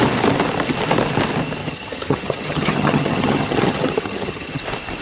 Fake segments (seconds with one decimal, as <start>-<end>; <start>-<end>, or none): 1.6-4.6